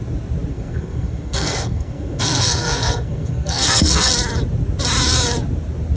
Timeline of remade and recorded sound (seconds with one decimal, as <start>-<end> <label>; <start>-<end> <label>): 0.0-0.5 recorded; 0.5-4.1 remade; 4.1-6.0 recorded